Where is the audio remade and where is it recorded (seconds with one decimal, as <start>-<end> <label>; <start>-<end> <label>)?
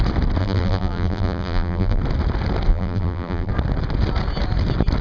0.0-0.4 recorded; 0.4-2.0 remade; 2.0-2.7 recorded; 2.7-3.5 remade; 3.5-5.0 recorded